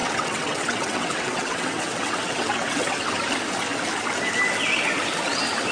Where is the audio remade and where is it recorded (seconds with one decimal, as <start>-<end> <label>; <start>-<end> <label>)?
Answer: 0.0-3.1 remade; 3.1-5.7 recorded